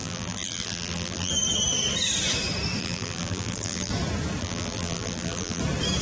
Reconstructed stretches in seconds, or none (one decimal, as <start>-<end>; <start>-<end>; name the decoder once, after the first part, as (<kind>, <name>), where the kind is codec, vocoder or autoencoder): 0.0-1.3 (vocoder, BigVGAN v2); 2.8-3.9; 4.4-5.6